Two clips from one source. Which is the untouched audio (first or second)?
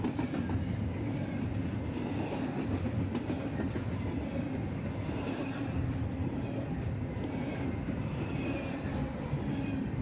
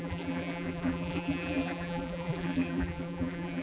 first